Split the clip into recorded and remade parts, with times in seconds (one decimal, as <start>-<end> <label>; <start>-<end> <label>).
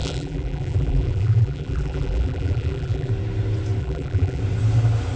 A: 0.0-3.1 remade; 3.1-3.8 recorded; 3.8-4.4 remade; 4.4-5.2 recorded